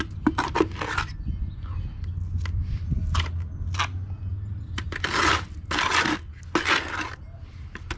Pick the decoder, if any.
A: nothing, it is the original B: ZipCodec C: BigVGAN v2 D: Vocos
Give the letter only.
A